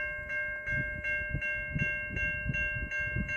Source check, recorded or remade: recorded